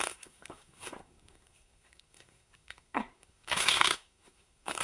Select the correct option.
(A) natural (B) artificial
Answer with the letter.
B